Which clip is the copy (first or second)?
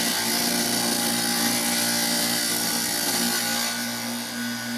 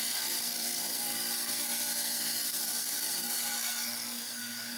second